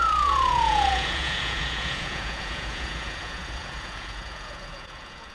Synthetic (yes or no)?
yes